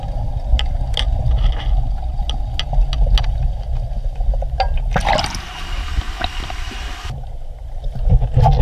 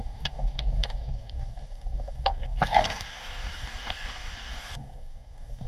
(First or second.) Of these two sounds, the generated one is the second